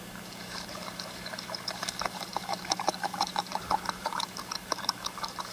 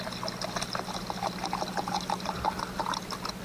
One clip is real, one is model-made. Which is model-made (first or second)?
first